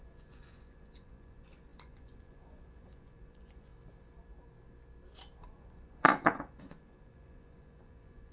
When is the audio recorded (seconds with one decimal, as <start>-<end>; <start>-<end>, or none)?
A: 3.7-5.4